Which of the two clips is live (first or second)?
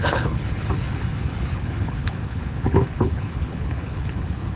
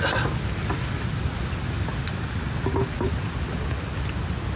second